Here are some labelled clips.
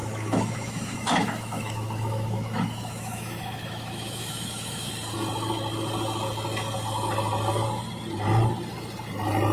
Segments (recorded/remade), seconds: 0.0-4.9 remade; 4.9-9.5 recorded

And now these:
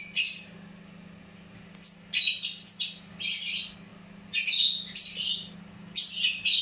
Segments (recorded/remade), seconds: 0.0-6.6 recorded

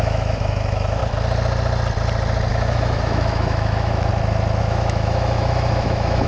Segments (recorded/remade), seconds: 0.0-1.0 remade; 1.0-2.5 recorded; 2.5-4.1 remade; 4.1-4.6 recorded; 4.6-6.3 remade

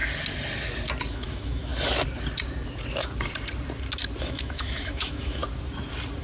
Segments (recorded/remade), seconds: 0.0-1.1 recorded; 1.1-1.7 remade; 1.7-4.2 recorded; 4.2-5.4 remade; 5.4-6.2 recorded

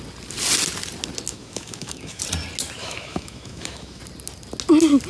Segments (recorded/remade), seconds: 0.0-1.3 recorded; 1.3-2.2 remade; 2.2-2.8 recorded; 2.8-4.0 remade; 4.0-5.1 recorded